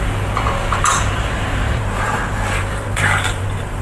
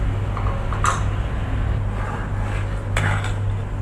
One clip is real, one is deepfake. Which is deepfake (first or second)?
first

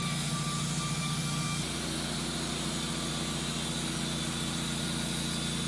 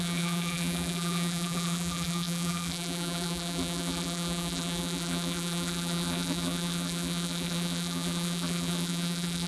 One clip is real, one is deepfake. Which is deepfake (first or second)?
second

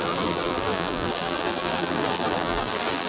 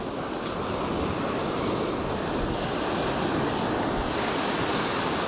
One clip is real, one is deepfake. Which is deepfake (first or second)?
first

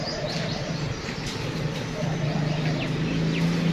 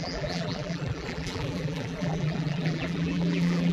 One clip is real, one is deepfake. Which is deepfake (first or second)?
second